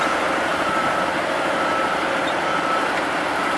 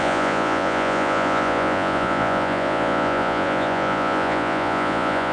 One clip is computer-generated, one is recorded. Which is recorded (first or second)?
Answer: first